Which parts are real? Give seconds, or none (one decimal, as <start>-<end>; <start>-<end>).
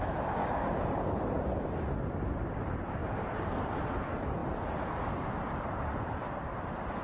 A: 0.0-0.4; 1.5-3.0; 4.0-7.0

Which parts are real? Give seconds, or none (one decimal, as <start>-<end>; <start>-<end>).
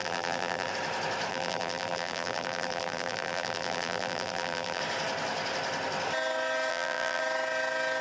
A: 0.7-1.3; 4.8-6.7; 7.2-8.0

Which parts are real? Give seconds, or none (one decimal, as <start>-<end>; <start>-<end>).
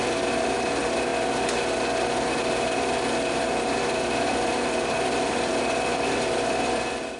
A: 1.1-2.4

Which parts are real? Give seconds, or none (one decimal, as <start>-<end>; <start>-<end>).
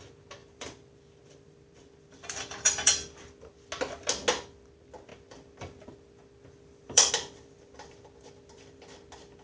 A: 0.0-0.4; 3.6-5.1; 7.1-9.4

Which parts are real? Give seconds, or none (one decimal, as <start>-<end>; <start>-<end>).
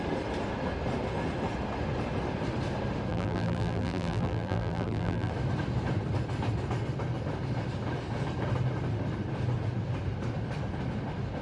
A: 0.0-3.1; 5.3-11.4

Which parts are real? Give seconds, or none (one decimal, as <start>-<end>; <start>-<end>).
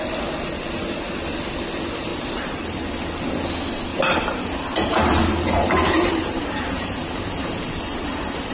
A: 0.0-2.1; 2.9-3.9; 7.6-8.5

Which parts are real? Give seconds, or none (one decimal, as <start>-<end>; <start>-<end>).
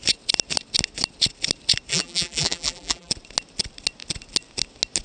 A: 0.0-1.9; 3.1-5.0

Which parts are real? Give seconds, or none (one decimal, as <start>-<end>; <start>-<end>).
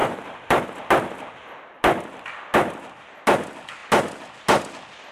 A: 0.6-5.1